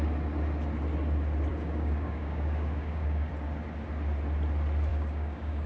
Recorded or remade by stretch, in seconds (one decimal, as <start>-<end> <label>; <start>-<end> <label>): 0.0-1.5 recorded; 1.5-3.3 remade; 3.3-4.9 recorded; 4.9-5.7 remade